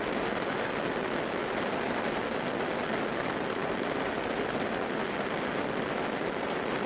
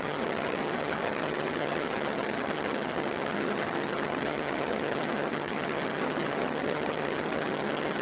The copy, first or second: second